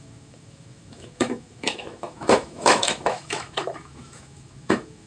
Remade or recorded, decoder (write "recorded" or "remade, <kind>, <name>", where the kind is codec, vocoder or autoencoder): remade, autoencoder, DAC-VAE